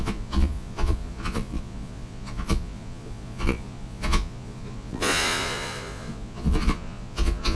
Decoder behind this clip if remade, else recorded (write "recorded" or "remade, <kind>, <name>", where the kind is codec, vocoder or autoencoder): remade, vocoder, Vocos